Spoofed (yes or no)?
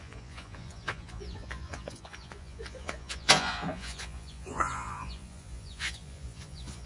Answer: yes